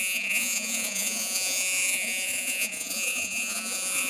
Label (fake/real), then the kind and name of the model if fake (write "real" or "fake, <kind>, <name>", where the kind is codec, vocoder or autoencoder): fake, vocoder, Vocos